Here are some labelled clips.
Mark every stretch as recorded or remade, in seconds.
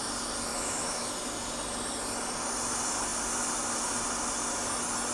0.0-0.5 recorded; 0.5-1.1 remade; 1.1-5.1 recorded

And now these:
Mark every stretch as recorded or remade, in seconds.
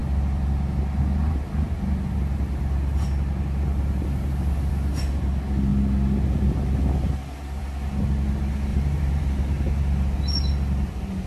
0.0-8.7 recorded; 8.7-9.2 remade; 9.2-11.3 recorded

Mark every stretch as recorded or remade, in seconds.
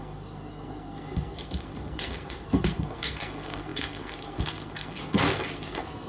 0.0-6.1 remade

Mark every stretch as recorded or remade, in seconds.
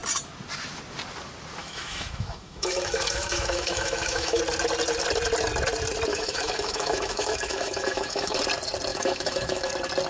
0.0-1.6 recorded; 1.6-4.4 remade; 4.4-6.1 recorded; 6.1-8.4 remade; 8.4-8.9 recorded; 8.9-9.7 remade; 9.7-10.1 recorded